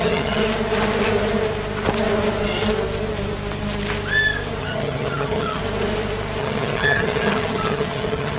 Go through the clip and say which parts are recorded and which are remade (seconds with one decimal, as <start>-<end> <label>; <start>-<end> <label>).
0.0-0.4 remade; 0.4-4.6 recorded; 4.6-5.6 remade; 5.6-6.4 recorded; 6.4-8.4 remade